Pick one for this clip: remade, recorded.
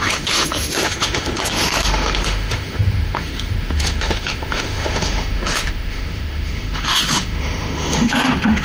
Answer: remade